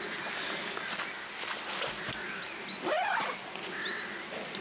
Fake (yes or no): no